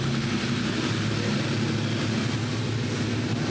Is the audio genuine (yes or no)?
yes